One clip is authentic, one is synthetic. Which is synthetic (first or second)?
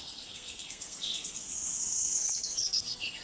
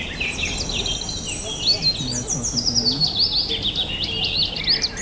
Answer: first